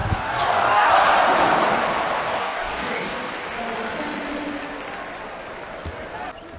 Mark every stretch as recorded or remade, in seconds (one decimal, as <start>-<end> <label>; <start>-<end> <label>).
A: 0.0-0.9 remade; 0.9-2.2 recorded; 2.2-3.3 remade; 3.3-6.6 recorded

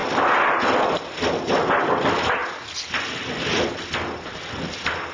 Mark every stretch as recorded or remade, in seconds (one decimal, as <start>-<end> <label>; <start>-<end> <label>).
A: 0.0-5.1 recorded

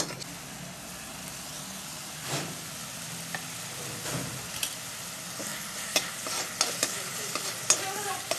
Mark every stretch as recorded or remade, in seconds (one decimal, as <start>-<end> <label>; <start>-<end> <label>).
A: 0.0-2.8 recorded; 2.8-4.6 remade; 4.6-8.4 recorded

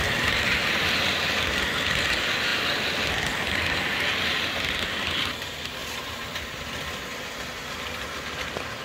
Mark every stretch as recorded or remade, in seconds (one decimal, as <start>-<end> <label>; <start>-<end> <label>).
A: 0.0-2.5 recorded; 2.5-3.1 remade; 3.1-5.8 recorded; 5.8-6.6 remade; 6.6-8.8 recorded